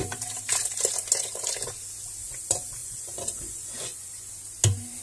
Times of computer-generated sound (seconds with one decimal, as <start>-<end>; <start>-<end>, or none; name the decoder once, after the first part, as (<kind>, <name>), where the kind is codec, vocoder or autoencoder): 2.8-4.3 (vocoder, Vocos)